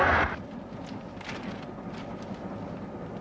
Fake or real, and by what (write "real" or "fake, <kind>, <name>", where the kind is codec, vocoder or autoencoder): real